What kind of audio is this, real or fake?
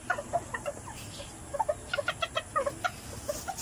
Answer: real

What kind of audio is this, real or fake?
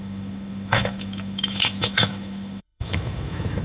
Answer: fake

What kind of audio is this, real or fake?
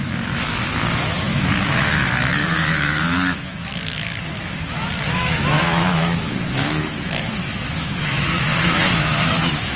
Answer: fake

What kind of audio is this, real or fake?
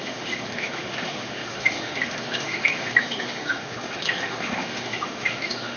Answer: fake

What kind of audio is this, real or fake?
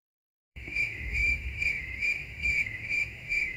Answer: fake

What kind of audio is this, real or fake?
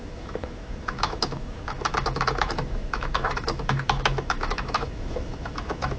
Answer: fake